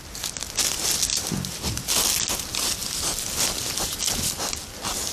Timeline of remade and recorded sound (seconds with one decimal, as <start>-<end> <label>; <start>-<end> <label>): 0.0-5.1 recorded

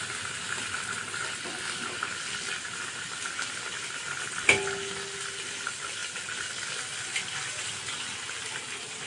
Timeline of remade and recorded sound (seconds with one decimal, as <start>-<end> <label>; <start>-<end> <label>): 0.0-9.1 recorded

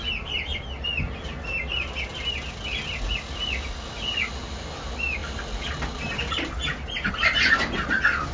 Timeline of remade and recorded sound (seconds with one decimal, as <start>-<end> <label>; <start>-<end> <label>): 0.0-8.3 recorded